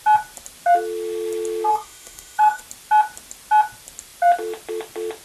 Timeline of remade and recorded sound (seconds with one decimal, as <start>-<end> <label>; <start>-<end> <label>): 0.0-1.7 recorded; 1.7-2.6 remade; 2.6-5.2 recorded